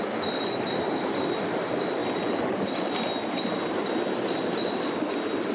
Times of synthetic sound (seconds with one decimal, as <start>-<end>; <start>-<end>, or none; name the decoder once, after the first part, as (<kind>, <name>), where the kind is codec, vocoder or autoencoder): none